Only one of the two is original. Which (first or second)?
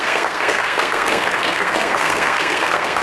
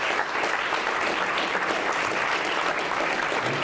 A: second